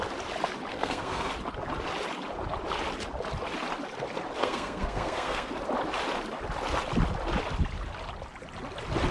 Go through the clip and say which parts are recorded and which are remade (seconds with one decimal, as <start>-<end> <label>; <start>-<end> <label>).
0.0-0.7 recorded; 0.7-1.3 remade; 1.3-4.4 recorded; 4.4-5.5 remade; 5.5-9.1 recorded

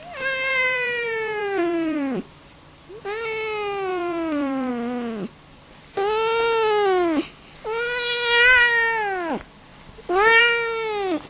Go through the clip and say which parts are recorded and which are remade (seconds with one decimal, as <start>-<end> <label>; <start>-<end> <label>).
0.0-0.5 recorded; 0.5-2.6 remade; 2.6-3.9 recorded; 3.9-4.7 remade; 4.7-11.3 recorded

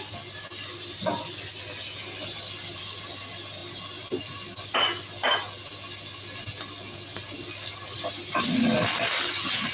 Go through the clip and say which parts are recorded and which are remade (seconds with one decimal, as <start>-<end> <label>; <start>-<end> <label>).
0.0-9.7 recorded

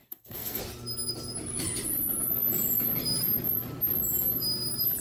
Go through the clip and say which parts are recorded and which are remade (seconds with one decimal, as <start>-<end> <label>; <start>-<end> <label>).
0.0-0.6 remade; 0.6-5.0 recorded